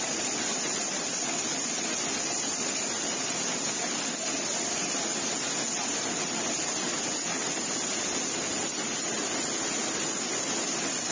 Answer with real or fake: real